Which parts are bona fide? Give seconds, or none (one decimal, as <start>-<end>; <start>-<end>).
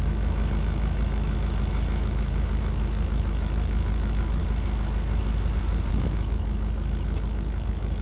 4.4-5.9